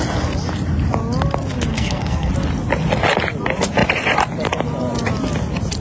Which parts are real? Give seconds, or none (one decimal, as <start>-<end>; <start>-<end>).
0.0-1.7; 2.3-5.8